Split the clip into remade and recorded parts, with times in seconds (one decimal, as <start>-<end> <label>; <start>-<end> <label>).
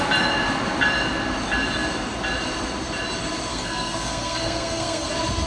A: 0.0-3.5 recorded; 3.5-5.1 remade; 5.1-5.5 recorded